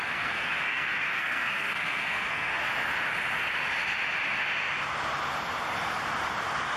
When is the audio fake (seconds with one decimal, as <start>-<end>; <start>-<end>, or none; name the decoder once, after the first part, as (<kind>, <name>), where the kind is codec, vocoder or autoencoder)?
0.0-2.5 (codec, SNAC)